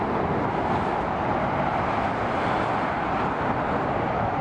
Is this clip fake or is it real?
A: real